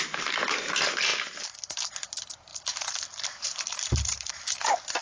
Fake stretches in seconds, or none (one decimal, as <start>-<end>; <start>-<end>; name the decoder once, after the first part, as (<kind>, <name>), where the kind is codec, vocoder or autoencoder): 2.5-4.3 (vocoder, BigVGAN v2)